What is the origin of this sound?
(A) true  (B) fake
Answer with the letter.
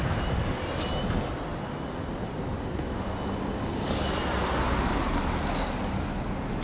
A